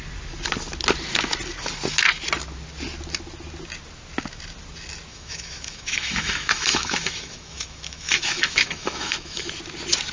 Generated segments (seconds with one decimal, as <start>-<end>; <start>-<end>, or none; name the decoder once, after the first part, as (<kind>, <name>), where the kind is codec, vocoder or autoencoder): 5.1-9.5 (autoencoder, DAC-VAE)